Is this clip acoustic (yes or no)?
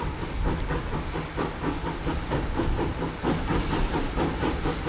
yes